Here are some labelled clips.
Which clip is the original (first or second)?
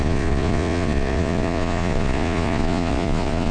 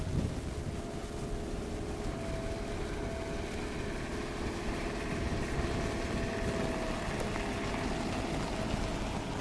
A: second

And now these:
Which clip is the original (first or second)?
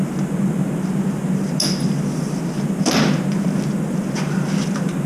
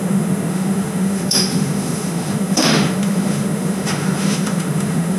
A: first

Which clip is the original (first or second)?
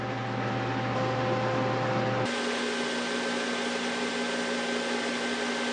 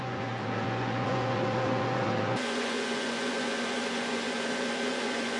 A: first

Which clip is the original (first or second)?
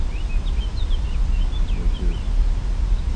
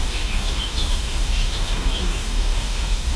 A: first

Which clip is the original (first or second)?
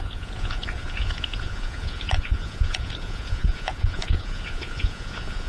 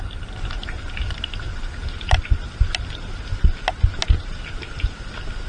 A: second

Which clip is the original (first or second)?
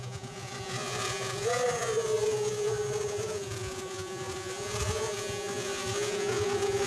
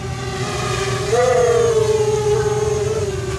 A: second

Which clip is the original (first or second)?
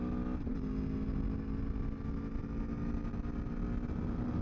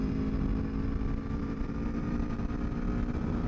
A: first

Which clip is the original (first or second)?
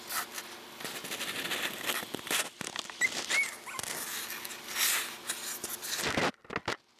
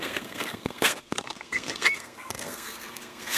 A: first